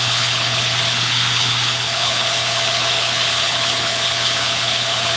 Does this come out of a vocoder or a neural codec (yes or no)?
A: yes